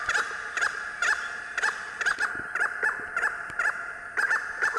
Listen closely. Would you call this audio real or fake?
real